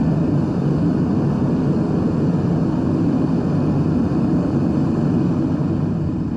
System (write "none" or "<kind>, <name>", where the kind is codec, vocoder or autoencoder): none